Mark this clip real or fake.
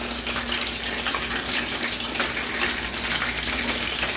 real